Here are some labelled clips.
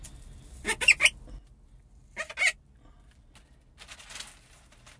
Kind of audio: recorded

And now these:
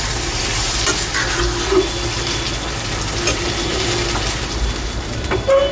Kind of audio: recorded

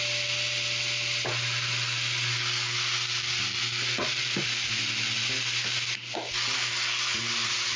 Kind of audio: recorded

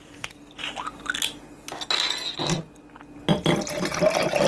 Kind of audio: recorded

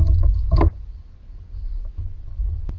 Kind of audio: recorded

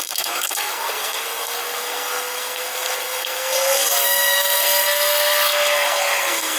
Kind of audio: remade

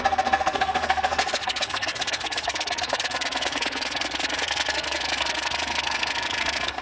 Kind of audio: remade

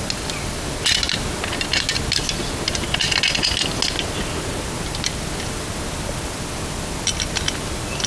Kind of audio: recorded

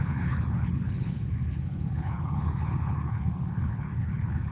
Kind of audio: remade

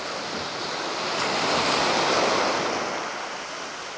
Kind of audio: recorded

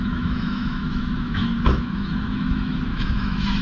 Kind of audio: remade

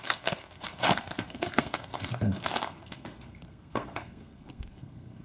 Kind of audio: remade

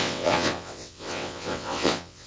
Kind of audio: remade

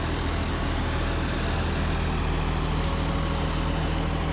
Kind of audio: recorded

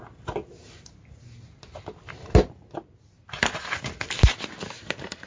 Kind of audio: recorded